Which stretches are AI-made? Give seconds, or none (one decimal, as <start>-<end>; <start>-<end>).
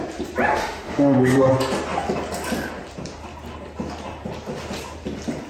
0.6-1.5